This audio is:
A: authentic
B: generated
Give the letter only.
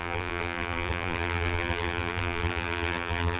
B